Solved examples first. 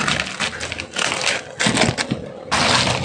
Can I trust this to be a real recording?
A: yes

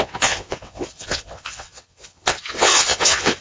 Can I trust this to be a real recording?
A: no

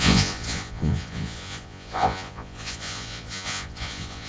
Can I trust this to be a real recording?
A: no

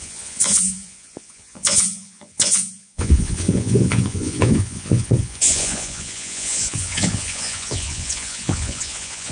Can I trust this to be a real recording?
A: no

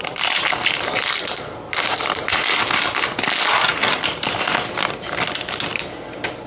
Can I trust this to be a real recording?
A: yes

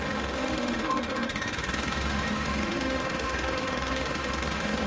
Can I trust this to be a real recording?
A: no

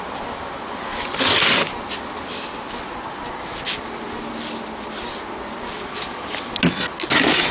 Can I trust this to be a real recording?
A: yes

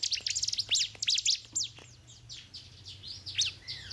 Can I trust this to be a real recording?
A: yes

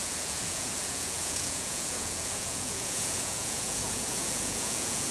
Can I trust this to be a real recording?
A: no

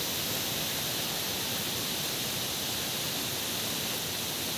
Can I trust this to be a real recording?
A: yes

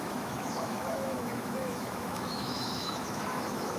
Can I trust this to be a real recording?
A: no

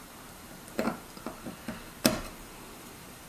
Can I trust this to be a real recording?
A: no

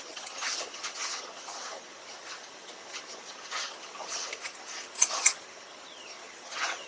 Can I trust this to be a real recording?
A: no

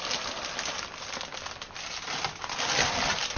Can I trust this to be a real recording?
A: yes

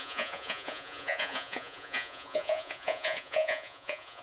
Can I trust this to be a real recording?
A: no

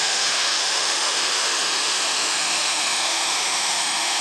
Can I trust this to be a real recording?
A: no